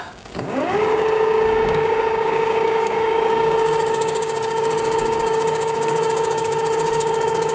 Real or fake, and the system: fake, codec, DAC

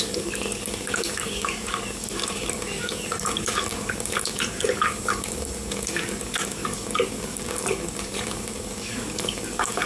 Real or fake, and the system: fake, codec, DAC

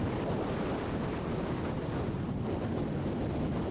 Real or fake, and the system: real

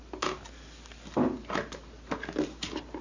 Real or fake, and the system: real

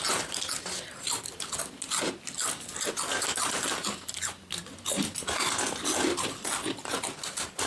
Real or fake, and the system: real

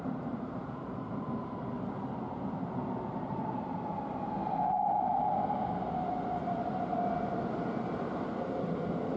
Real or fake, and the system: real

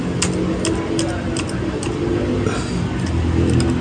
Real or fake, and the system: real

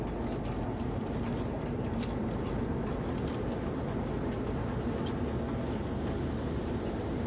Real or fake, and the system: real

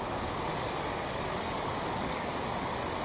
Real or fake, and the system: fake, codec, DAC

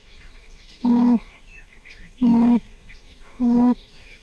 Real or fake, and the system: fake, codec, DAC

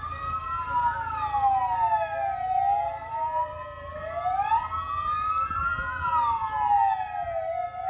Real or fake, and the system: real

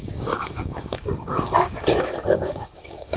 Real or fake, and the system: fake, codec, DAC